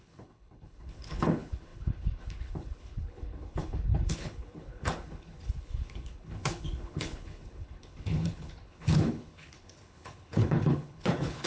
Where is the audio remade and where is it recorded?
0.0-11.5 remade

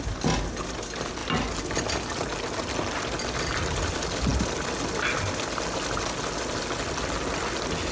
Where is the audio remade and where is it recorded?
0.0-7.9 recorded

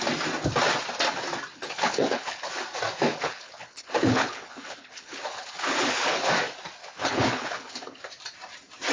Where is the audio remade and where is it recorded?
0.0-1.5 recorded; 1.5-2.5 remade; 2.5-3.1 recorded; 3.1-6.3 remade; 6.3-6.8 recorded; 6.8-8.0 remade; 8.0-8.9 recorded

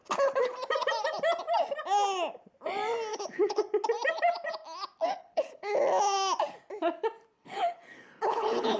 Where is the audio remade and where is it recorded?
0.0-3.1 recorded; 3.1-3.6 remade; 3.6-5.2 recorded; 5.2-5.8 remade; 5.8-7.3 recorded; 7.3-8.8 remade

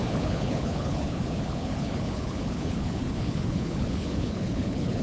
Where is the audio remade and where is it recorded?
0.0-5.0 remade

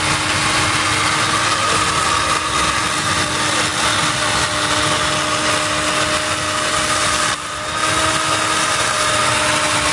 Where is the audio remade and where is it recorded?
0.0-9.9 recorded